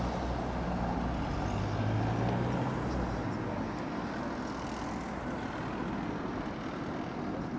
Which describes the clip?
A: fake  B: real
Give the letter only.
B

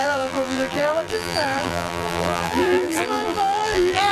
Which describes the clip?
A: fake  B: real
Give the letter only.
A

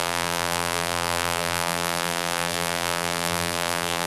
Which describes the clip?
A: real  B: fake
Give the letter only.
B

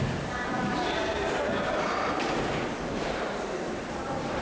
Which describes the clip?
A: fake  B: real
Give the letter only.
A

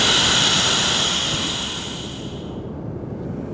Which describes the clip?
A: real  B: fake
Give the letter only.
A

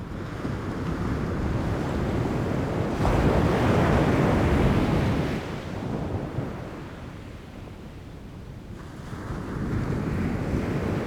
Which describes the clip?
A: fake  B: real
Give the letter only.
B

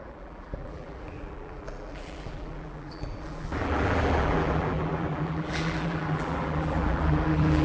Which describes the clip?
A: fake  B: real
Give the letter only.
A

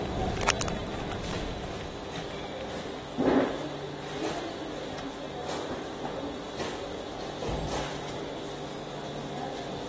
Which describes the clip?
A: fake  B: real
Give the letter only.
B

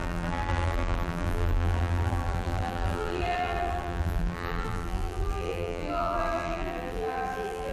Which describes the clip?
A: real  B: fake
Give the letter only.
B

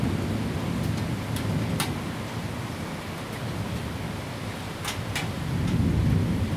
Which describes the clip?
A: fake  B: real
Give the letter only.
B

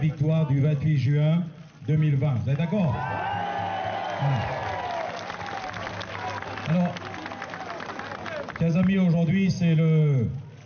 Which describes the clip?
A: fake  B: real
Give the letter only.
B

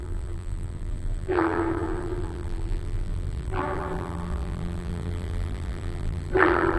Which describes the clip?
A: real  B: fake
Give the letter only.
B